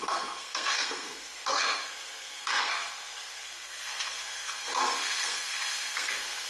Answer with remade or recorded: remade